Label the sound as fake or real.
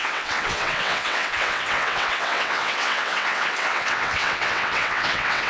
fake